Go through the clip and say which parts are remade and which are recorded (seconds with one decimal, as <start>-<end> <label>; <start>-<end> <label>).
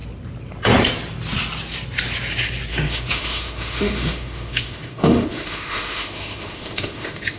0.0-2.7 recorded; 2.7-7.4 remade